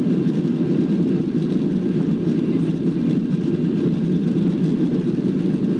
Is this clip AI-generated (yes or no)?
no